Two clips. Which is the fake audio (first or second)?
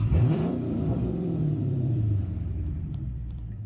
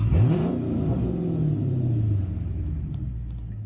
first